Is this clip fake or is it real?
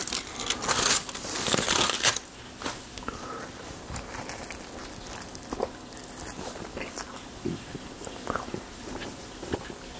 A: real